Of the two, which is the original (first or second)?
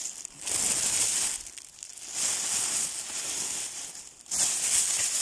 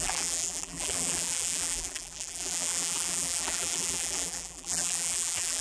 first